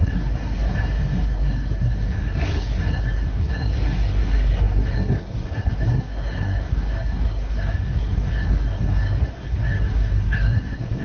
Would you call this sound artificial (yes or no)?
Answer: yes